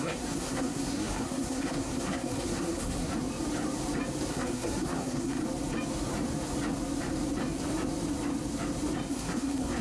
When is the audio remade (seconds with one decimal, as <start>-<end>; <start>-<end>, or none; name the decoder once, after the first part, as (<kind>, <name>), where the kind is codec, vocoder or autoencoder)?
0.0-3.1 (codec, SNAC); 4.3-5.4; 9.1-9.8